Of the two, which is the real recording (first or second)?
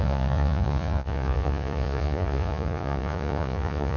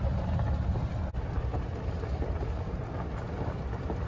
second